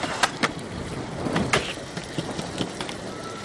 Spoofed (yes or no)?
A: no